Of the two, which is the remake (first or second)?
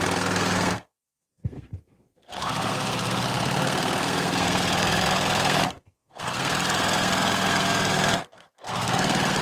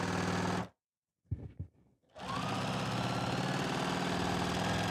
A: first